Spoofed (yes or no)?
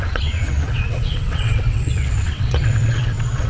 yes